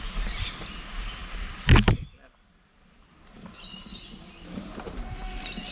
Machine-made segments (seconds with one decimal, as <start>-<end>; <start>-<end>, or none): none

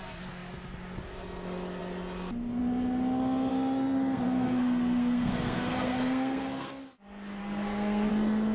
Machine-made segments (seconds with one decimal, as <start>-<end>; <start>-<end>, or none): 3.5-6.7; 7.4-8.1